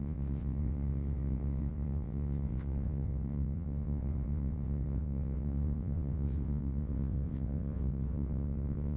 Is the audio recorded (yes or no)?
no